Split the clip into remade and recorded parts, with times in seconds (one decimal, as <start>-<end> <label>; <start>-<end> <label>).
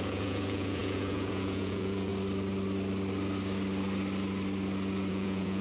0.0-2.1 remade; 2.1-5.1 recorded; 5.1-5.6 remade